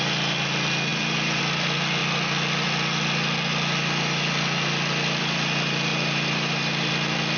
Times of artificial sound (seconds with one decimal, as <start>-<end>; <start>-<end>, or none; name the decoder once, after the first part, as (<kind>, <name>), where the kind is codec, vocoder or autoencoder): 0.9-1.4 (vocoder, BigVGAN v2); 5.9-6.9